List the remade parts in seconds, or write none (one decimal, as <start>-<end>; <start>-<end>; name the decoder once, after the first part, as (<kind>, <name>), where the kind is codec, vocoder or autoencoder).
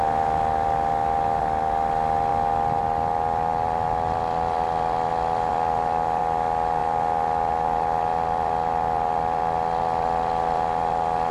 3.5-5.1 (vocoder, BigVGAN v2); 5.5-6.2; 6.8-11.3